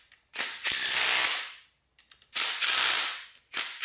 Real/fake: real